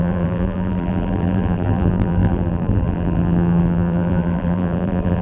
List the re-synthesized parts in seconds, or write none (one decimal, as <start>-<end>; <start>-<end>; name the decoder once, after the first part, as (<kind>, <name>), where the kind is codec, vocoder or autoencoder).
0.0-5.2 (vocoder, BigVGAN v2)